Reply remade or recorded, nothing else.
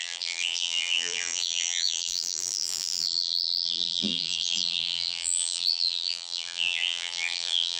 remade